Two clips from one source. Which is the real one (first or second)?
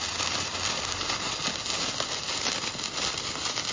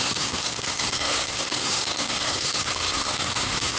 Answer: first